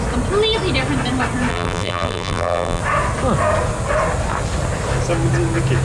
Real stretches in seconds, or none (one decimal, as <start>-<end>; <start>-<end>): 0.0-1.5; 2.8-5.8